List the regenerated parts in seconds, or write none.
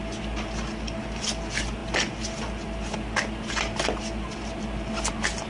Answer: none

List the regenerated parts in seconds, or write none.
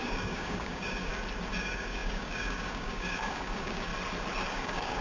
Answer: 0.0-1.1 (codec, DAC); 1.6-3.9; 4.5-5.0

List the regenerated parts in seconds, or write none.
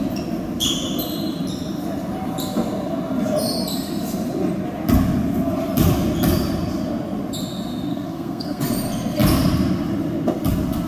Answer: 7.9-8.6 (codec, SNAC)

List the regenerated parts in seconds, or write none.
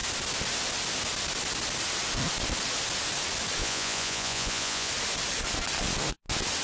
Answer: 3.6-4.9 (vocoder, Vocos)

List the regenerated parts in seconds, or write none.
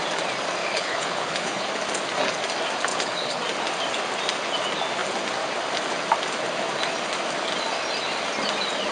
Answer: 0.6-1.7 (codec, HILCodec); 2.9-3.4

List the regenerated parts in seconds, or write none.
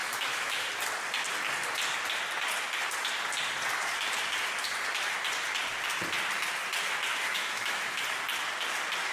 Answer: 0.0-0.7 (autoencoder, DAC-VAE); 7.1-8.0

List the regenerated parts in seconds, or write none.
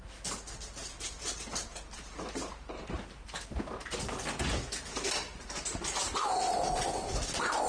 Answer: 0.8-3.1 (vocoder, BigVGAN v2)